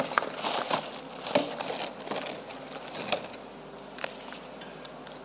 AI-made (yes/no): no